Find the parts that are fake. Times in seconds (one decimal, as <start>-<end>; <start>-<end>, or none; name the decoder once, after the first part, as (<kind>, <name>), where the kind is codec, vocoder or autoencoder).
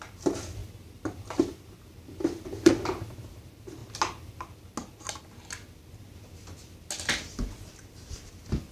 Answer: 0.6-2.7 (vocoder, BigVGAN v2)